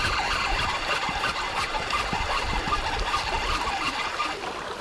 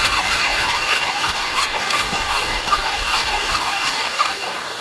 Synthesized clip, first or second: second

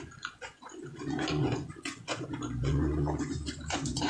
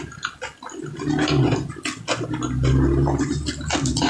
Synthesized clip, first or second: first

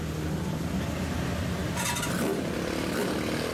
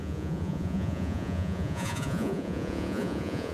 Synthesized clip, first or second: second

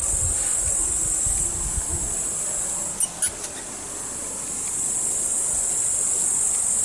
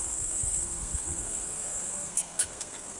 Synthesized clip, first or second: second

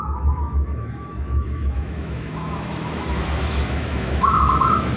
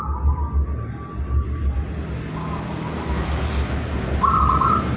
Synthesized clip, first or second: first